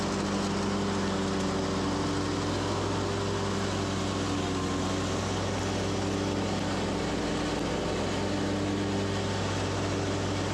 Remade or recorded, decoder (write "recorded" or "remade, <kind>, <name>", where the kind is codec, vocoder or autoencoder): recorded